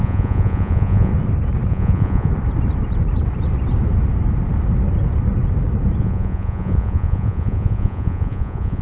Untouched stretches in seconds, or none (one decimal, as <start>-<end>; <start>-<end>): 1.1-1.7; 2.3-6.0